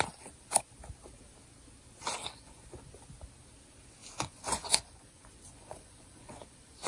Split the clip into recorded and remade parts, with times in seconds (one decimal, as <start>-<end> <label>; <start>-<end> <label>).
0.0-2.2 recorded; 2.2-2.7 remade; 2.7-4.0 recorded; 4.0-6.9 remade